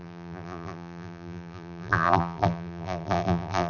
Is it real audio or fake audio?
fake